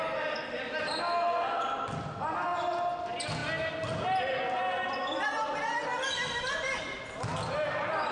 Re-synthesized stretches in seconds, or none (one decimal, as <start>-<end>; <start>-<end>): none